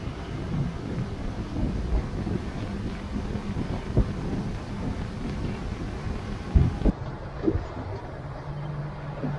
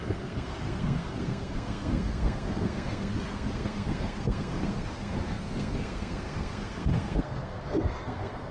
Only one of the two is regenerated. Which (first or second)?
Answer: second